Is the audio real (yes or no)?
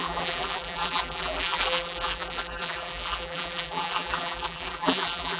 no